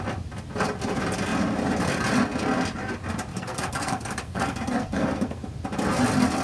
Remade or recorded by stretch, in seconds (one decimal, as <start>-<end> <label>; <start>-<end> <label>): 0.0-3.3 recorded; 3.3-5.4 remade; 5.4-6.4 recorded